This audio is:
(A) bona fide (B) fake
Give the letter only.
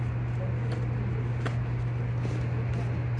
A